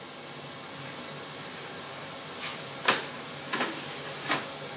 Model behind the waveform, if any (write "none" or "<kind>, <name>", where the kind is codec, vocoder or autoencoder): none